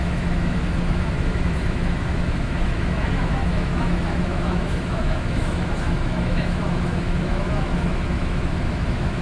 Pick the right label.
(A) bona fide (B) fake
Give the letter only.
B